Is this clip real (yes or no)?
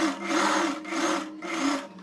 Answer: yes